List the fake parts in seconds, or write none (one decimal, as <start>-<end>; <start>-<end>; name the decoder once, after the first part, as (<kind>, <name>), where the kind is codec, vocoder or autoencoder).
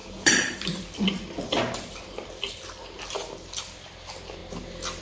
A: 0.0-4.4 (vocoder, BigVGAN v2)